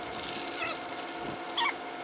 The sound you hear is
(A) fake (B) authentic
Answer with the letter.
A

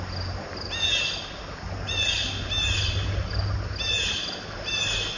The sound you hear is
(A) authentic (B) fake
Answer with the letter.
A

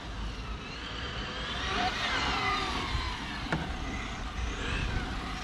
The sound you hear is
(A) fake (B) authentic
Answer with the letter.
B